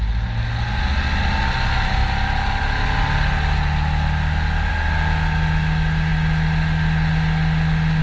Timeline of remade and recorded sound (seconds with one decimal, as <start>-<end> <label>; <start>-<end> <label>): 0.0-8.0 recorded